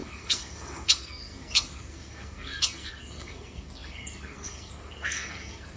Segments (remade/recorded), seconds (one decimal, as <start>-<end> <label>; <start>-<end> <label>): 0.0-5.8 remade